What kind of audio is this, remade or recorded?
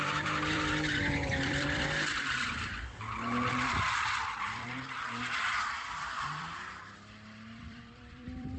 remade